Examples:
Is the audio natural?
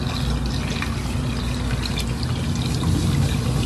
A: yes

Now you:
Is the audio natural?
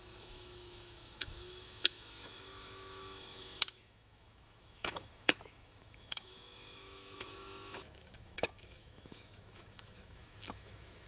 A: no